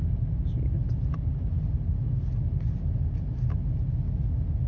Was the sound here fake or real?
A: real